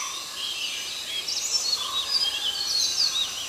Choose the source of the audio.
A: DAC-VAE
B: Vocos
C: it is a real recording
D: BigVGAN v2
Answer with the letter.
D